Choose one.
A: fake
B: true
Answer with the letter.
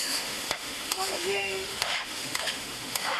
A